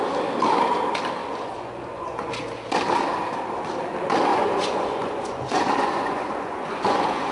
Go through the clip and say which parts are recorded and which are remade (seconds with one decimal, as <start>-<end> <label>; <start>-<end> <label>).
0.0-1.2 recorded; 1.2-2.3 remade; 2.3-4.3 recorded; 4.3-7.3 remade